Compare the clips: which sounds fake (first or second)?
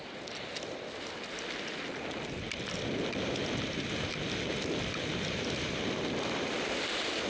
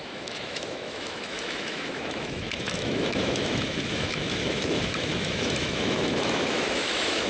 second